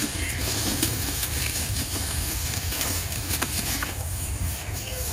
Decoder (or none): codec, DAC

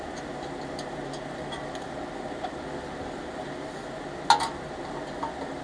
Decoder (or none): none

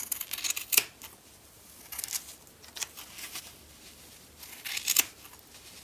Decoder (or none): none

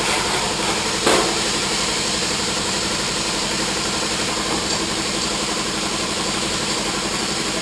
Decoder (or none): vocoder, BigVGAN v2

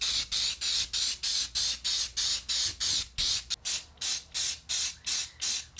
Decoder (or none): none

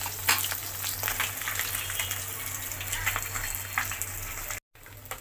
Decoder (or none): none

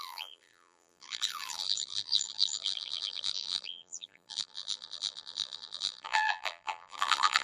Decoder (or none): vocoder, BigVGAN v2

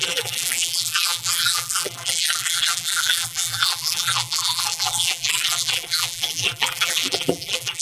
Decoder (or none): vocoder, BigVGAN v2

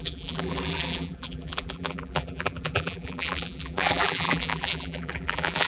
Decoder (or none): vocoder, BigVGAN v2